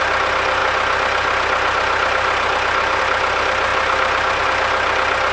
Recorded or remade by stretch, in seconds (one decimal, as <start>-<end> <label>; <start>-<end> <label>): 0.0-5.3 recorded